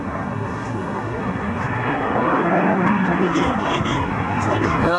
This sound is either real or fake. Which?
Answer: fake